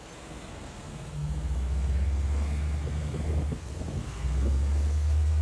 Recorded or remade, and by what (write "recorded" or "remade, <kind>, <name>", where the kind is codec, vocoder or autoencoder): remade, codec, SNAC